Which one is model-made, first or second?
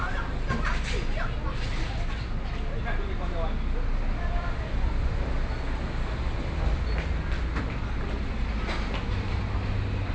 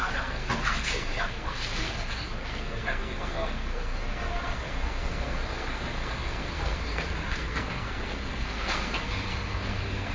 second